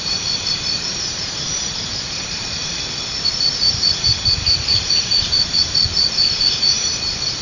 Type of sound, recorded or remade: remade